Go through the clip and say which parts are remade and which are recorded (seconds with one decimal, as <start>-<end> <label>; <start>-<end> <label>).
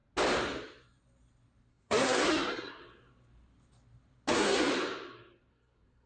0.0-1.7 recorded; 1.7-2.8 remade; 2.8-4.3 recorded; 4.3-4.7 remade; 4.7-5.5 recorded; 5.5-6.1 remade